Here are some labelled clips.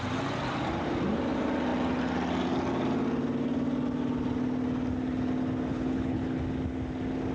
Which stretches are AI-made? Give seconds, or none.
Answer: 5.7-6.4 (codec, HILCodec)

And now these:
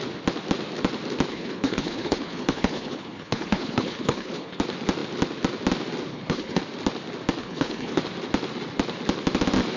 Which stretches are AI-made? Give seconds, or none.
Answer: 1.3-4.6 (codec, HILCodec); 6.1-6.6; 7.4-8.0

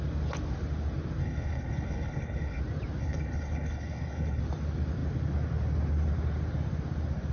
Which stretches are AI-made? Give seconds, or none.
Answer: 1.2-2.6 (codec, HILCodec); 3.0-4.4

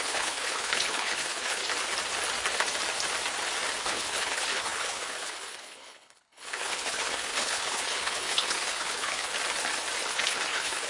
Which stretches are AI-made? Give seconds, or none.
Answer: 0.0-1.6 (codec, HILCodec); 3.8-9.3; 10.1-10.9

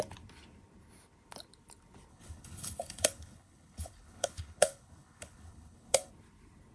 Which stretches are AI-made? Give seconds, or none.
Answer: 2.1-6.1 (codec, HILCodec)

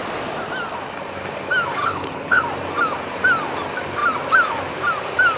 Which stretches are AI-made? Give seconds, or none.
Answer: 1.8-2.4 (codec, HILCodec)